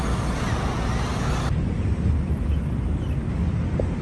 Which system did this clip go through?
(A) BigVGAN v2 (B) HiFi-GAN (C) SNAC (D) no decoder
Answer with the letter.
D